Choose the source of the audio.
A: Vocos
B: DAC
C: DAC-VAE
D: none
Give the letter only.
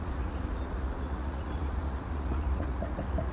A